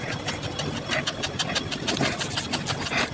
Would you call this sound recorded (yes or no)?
yes